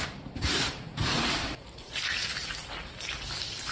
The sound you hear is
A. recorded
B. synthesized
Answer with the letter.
B